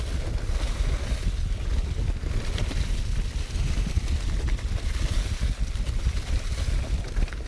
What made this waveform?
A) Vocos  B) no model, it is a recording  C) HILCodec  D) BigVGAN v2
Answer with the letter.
B